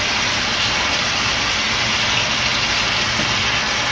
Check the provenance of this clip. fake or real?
real